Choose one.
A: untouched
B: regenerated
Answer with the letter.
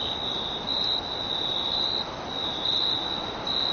A